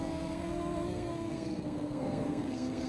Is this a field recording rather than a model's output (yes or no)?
no